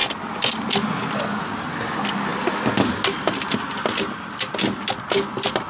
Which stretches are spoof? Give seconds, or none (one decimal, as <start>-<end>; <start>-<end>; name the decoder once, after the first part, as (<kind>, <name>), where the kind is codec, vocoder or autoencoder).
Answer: none